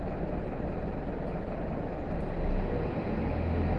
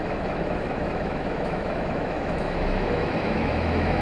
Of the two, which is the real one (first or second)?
first